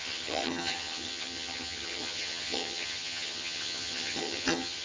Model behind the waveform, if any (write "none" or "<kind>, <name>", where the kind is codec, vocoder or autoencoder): vocoder, HiFi-GAN